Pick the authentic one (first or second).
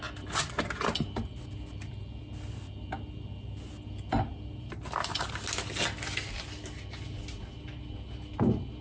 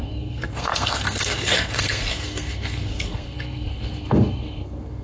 first